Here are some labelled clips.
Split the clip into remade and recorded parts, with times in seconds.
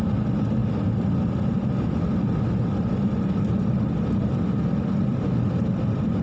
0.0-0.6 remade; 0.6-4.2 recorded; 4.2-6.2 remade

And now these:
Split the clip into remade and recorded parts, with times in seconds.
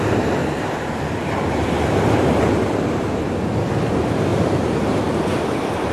0.0-0.4 recorded; 0.4-1.0 remade; 1.0-4.3 recorded; 4.3-5.2 remade; 5.2-5.9 recorded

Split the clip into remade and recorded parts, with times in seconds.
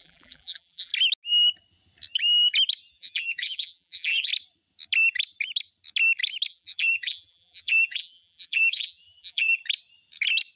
0.0-0.9 remade; 0.9-2.9 recorded; 2.9-4.3 remade; 4.3-6.5 recorded; 6.5-9.6 remade; 9.6-10.6 recorded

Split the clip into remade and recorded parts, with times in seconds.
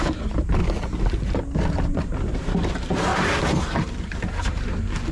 0.0-0.6 remade; 0.6-1.7 recorded; 1.7-3.1 remade; 3.1-3.6 recorded; 3.6-5.1 remade